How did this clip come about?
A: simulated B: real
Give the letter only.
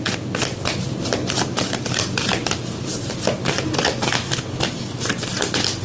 B